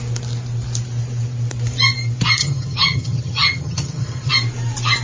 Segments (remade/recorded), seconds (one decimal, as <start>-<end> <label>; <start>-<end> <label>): 0.0-2.4 recorded; 2.4-4.3 remade; 4.3-5.0 recorded